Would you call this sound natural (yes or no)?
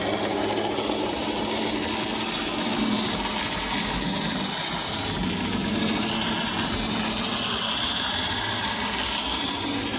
yes